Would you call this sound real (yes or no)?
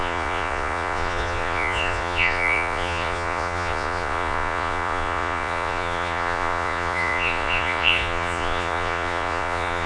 no